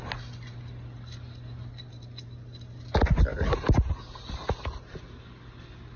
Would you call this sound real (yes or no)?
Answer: yes